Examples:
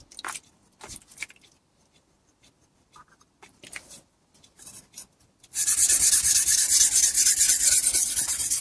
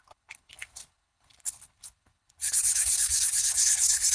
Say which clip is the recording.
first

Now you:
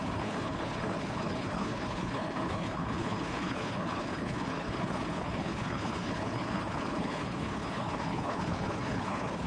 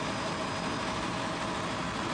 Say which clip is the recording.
second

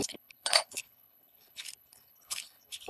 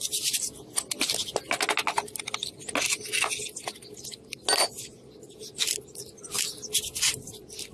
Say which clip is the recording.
second